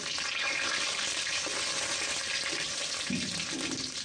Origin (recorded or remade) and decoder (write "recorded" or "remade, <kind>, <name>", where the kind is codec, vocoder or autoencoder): recorded